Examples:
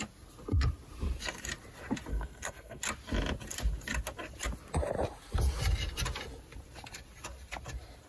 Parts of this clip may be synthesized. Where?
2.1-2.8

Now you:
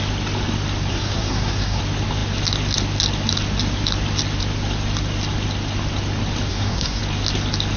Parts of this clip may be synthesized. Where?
0.9-1.8; 6.5-7.0

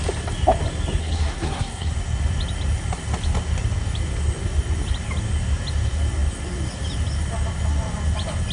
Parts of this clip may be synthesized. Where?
1.0-1.9

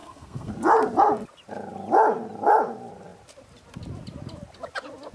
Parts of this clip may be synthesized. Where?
0.0-0.5